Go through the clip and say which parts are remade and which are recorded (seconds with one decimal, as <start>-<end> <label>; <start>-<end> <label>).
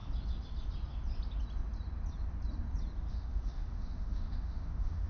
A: 0.0-3.1 recorded; 3.1-5.1 remade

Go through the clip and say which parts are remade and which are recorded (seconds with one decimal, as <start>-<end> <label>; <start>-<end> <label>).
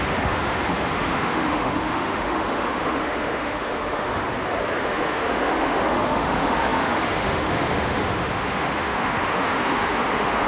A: 0.0-4.3 remade; 4.3-4.8 recorded; 4.8-10.5 remade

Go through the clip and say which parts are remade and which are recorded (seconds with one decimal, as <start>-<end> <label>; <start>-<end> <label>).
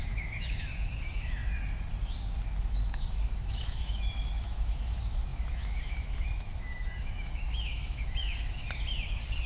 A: 0.0-1.4 remade; 1.4-2.6 recorded; 2.6-8.6 remade; 8.6-9.5 recorded